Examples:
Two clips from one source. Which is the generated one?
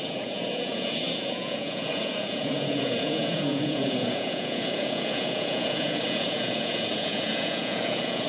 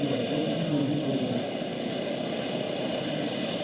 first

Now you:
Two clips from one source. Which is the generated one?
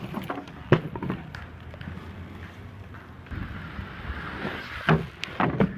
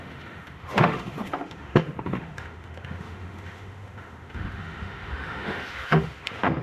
second